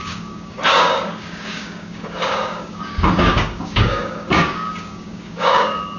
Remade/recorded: remade